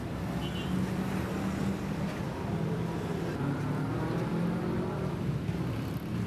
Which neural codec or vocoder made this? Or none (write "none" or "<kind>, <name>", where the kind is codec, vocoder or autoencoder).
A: none